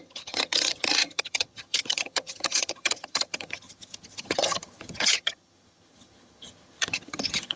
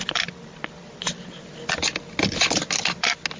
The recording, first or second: second